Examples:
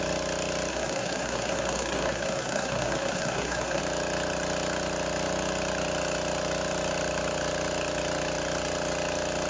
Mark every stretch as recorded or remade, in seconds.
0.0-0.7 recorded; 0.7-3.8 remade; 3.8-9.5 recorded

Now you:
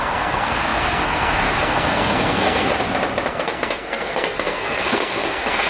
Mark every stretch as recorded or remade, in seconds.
0.0-2.7 remade; 2.7-3.3 recorded; 3.3-5.7 remade

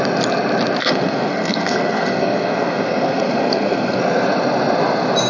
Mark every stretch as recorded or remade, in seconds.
0.0-0.8 recorded; 0.8-4.0 remade; 4.0-5.3 recorded

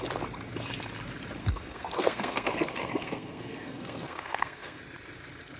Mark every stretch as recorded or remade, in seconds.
0.0-1.4 recorded; 1.4-4.8 remade; 4.8-5.6 recorded

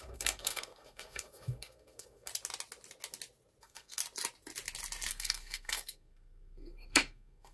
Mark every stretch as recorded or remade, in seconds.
0.0-2.3 remade; 2.3-3.6 recorded; 3.6-4.0 remade; 4.0-5.1 recorded; 5.1-7.5 remade

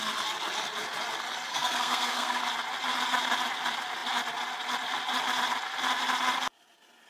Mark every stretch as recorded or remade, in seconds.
0.0-1.5 recorded; 1.5-2.4 remade; 2.4-7.1 recorded